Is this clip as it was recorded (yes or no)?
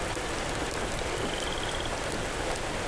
yes